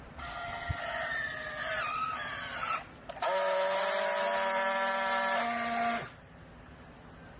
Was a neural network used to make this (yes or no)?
no